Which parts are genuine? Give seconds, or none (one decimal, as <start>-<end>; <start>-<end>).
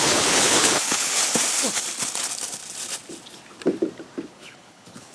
1.2-4.3